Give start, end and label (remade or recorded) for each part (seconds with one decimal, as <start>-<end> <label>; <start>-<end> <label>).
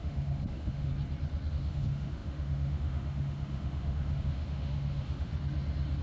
0.0-0.9 remade; 0.9-1.5 recorded; 1.5-5.3 remade; 5.3-6.0 recorded